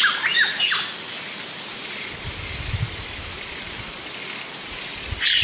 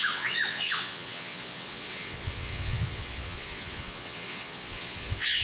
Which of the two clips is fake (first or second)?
second